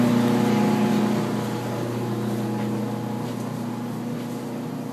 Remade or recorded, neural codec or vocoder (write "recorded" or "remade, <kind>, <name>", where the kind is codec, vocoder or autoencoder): recorded